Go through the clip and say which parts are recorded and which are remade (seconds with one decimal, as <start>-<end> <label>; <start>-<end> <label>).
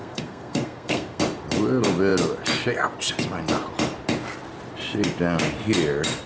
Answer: 0.0-1.2 remade; 1.2-6.3 recorded